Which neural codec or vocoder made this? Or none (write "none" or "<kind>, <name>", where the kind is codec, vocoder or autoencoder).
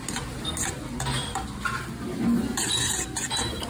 none